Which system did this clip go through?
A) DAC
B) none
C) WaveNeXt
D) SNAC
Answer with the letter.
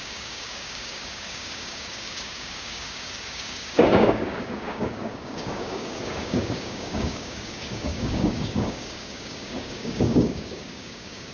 A